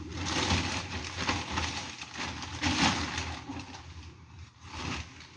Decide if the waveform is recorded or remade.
recorded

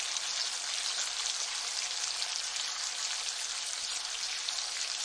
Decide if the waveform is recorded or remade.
recorded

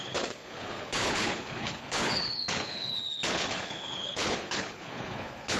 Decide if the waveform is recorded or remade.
remade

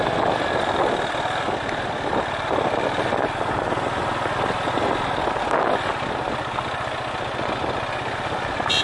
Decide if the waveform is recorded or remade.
recorded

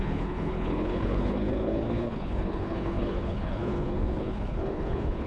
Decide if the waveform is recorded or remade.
remade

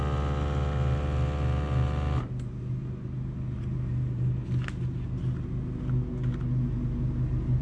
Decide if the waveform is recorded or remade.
recorded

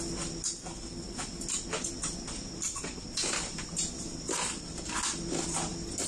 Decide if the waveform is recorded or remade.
recorded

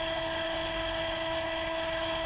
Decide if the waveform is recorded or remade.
remade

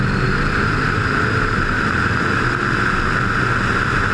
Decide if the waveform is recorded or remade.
recorded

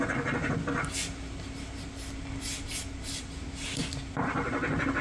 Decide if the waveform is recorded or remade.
recorded